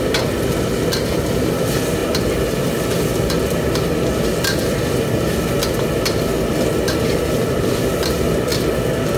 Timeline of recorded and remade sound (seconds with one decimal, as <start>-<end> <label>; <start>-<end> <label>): 0.0-9.2 recorded